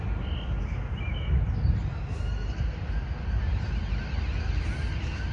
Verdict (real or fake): real